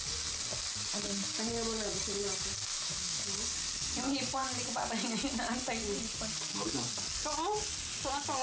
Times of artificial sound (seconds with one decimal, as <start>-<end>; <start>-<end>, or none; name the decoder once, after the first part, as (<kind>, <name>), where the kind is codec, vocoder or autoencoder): 2.7-3.2 (autoencoder, DAC-VAE)